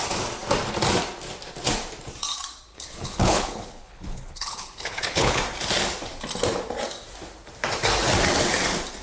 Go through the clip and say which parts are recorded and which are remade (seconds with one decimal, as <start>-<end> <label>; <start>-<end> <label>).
0.0-2.7 recorded; 2.7-5.4 remade; 5.4-9.0 recorded